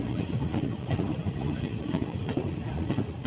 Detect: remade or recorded remade